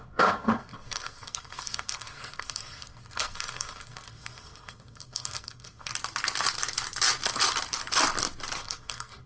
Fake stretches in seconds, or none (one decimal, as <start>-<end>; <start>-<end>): 0.0-5.9; 8.6-9.3